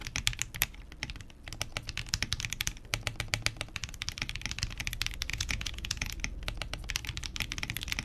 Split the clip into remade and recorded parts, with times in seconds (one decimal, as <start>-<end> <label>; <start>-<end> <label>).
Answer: 0.0-5.3 recorded; 5.3-6.1 remade; 6.1-8.0 recorded